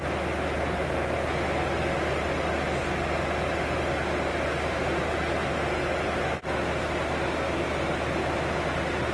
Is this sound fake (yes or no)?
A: no